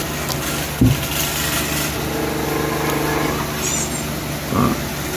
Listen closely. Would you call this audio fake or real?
real